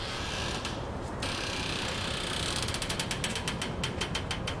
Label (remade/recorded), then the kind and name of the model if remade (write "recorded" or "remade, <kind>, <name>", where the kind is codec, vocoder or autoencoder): recorded